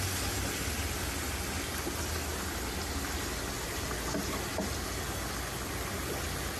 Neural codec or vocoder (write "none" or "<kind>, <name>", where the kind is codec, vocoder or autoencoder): none